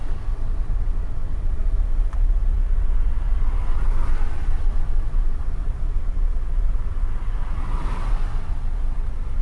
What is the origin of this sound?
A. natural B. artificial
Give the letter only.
B